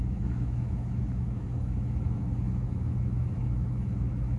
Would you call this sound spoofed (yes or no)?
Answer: yes